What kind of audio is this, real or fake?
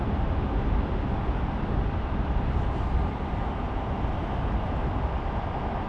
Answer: real